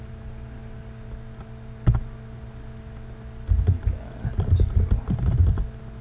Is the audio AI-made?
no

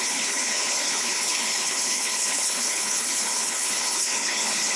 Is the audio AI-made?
yes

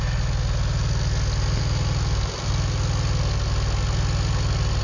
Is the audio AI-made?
no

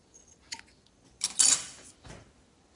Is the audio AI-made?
no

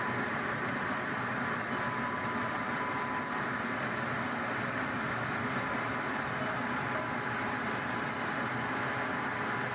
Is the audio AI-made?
no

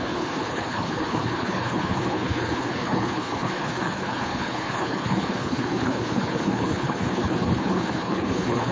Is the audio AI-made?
yes